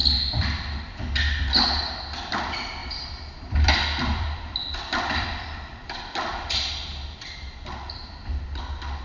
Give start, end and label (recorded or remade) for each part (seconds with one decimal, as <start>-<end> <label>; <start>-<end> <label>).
0.0-2.8 recorded; 2.8-6.7 remade; 6.7-9.0 recorded